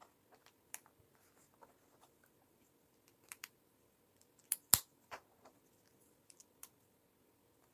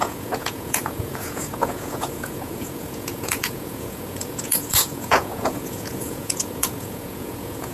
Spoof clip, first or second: second